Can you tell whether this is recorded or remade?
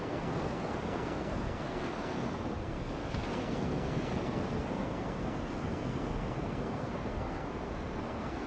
remade